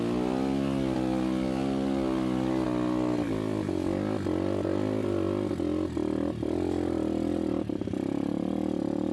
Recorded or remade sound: recorded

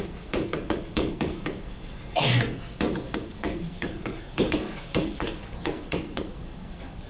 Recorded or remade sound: remade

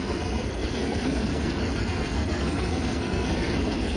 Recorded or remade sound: remade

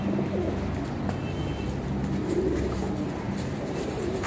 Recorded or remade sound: recorded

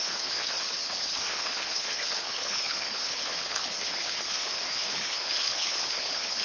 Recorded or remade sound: remade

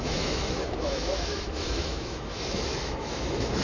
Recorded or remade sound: remade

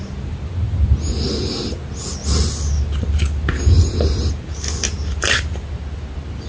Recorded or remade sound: recorded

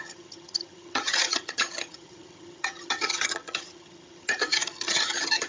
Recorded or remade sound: remade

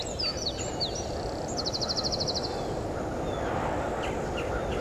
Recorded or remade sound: recorded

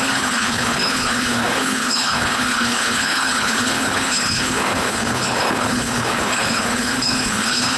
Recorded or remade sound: remade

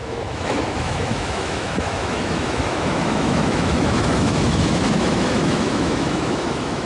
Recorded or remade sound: remade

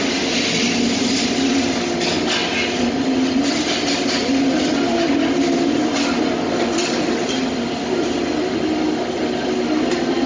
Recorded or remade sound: recorded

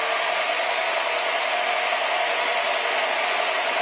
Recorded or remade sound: recorded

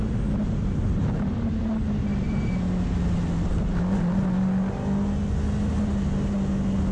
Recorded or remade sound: recorded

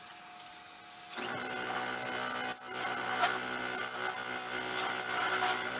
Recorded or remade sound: recorded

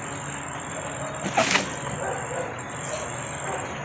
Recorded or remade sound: recorded